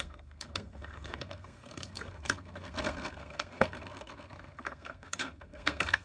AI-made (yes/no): yes